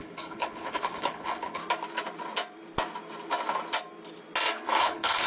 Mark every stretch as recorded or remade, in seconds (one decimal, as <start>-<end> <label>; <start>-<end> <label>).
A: 0.0-1.6 remade; 1.6-4.8 recorded; 4.8-5.3 remade